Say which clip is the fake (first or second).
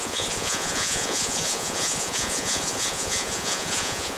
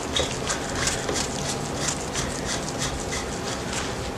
first